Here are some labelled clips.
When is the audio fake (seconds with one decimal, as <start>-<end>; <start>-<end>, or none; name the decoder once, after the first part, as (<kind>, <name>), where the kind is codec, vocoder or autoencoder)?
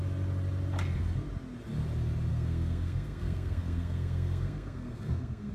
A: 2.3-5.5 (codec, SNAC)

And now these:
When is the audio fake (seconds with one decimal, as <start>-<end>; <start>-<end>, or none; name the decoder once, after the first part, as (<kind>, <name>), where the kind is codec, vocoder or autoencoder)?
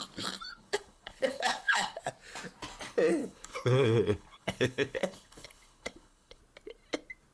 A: 0.5-2.0 (codec, HILCodec); 3.2-6.4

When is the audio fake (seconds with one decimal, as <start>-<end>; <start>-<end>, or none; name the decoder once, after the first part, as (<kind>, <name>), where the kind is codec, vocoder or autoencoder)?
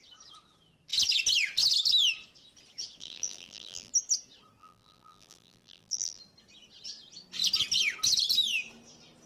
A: 3.0-3.9 (vocoder, BigVGAN v2); 4.6-6.2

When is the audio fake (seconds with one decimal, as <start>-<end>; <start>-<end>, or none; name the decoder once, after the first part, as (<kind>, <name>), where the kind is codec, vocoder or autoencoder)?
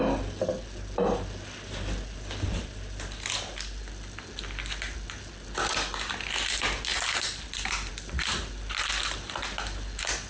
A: none